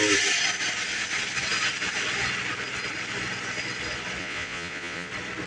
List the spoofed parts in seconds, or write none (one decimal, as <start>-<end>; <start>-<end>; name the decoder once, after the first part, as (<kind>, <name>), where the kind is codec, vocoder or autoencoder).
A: 4.2-5.1 (vocoder, Vocos)